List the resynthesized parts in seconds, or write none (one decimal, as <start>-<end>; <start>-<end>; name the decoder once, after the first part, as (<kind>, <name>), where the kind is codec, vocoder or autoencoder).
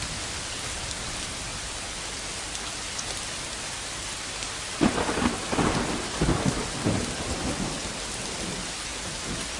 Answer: none